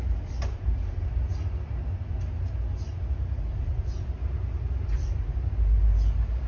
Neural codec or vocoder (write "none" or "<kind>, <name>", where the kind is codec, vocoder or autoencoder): none